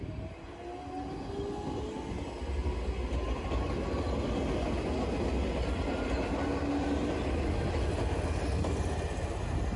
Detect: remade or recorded recorded